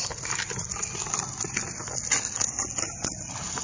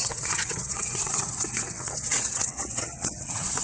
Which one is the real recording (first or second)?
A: first